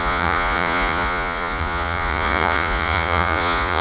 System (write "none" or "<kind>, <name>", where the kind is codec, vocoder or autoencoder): vocoder, Vocos